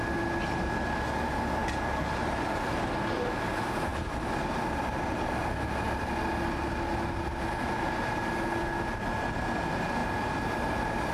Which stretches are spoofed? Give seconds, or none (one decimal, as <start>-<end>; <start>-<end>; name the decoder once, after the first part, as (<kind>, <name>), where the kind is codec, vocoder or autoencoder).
1.6-2.5 (vocoder, BigVGAN v2); 10.0-11.1

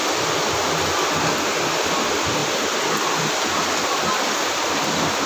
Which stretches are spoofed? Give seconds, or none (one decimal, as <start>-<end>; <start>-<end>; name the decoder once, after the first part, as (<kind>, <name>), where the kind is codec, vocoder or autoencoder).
none

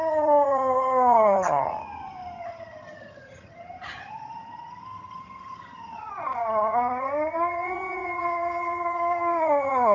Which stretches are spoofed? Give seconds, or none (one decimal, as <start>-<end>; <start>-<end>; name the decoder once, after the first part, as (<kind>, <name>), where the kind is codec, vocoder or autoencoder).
0.0-1.7 (vocoder, HiFi-GAN); 2.4-9.9

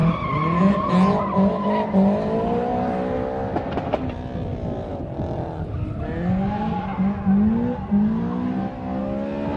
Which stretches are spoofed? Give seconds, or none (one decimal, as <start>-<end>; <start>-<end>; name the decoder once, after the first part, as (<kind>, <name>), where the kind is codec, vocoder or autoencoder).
none

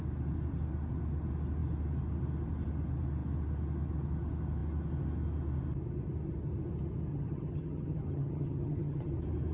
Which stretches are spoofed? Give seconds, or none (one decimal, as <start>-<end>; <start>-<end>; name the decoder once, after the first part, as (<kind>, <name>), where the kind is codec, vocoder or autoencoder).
7.1-9.1 (vocoder, HiFi-GAN)

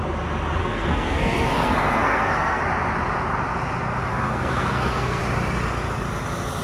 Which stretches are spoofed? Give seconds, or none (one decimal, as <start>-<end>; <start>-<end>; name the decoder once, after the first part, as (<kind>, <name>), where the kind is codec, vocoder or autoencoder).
0.6-2.6 (codec, SNAC); 4.1-5.2

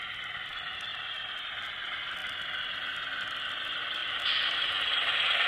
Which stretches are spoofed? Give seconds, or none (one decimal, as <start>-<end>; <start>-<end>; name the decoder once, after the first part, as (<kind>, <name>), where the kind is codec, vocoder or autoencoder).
0.9-1.5 (vocoder, BigVGAN v2); 4.0-4.7